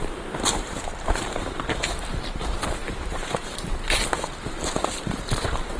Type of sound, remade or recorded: remade